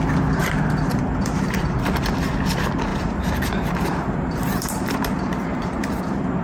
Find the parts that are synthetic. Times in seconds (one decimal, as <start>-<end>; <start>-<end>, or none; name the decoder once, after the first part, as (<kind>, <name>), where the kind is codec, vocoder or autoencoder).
0.4-2.0 (vocoder, BigVGAN v2); 2.9-6.0